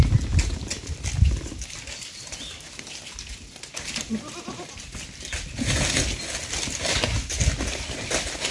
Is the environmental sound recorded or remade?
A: recorded